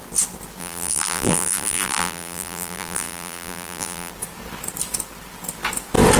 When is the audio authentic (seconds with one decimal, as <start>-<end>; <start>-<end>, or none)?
0.0-0.6; 4.1-6.2